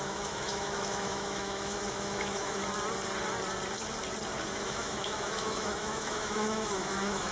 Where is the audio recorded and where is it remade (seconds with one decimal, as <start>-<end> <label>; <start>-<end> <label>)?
0.0-2.6 remade; 2.6-4.5 recorded; 4.5-7.3 remade